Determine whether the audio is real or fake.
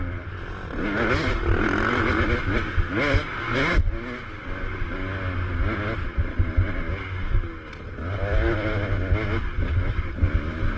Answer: real